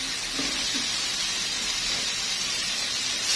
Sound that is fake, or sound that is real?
real